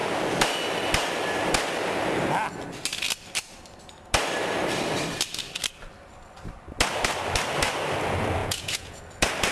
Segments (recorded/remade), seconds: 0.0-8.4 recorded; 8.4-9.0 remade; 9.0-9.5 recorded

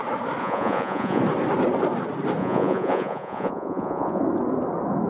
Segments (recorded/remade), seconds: 0.0-0.4 recorded; 0.4-1.2 remade; 1.2-2.4 recorded; 2.4-4.2 remade; 4.2-5.1 recorded

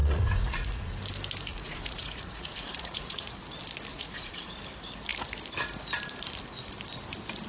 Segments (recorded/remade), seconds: 0.0-1.0 remade; 1.0-1.5 recorded; 1.5-3.4 remade; 3.4-3.9 recorded; 3.9-4.6 remade; 4.6-7.5 recorded